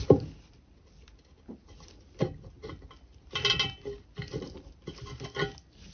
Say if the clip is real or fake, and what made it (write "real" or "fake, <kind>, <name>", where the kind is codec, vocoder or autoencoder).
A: real